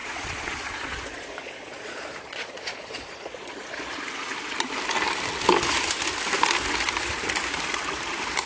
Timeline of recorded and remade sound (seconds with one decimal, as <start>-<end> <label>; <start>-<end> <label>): 0.0-3.9 remade; 3.9-8.5 recorded